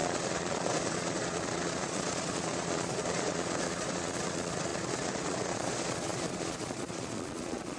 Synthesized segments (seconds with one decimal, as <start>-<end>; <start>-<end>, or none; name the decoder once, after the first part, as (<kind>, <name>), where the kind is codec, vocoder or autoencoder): 0.0-7.8 (vocoder, Vocos)